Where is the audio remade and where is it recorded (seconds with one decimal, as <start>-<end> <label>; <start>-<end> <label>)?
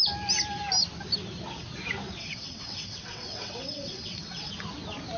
0.0-2.2 recorded; 2.2-4.5 remade; 4.5-5.2 recorded